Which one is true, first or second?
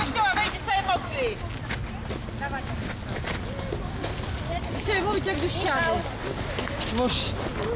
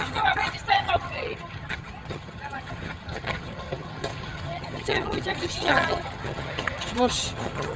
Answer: first